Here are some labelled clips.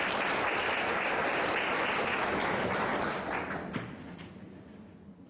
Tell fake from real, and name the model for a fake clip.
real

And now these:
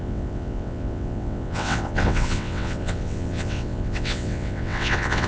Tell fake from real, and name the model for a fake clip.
fake, vocoder, WaveNeXt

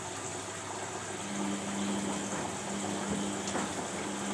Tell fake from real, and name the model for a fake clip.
real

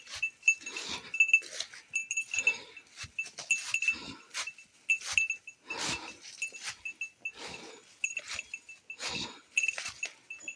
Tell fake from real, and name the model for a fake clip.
real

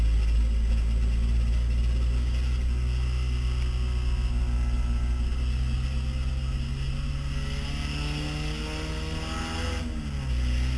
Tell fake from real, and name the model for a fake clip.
real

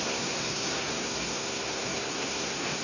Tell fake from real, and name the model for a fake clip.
fake, codec, SNAC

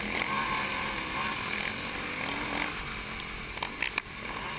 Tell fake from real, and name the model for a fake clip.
real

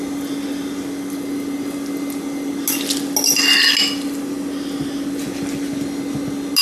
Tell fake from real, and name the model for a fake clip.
real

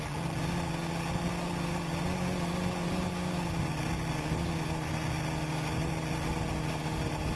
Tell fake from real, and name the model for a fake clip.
real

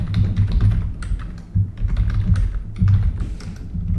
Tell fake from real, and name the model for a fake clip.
real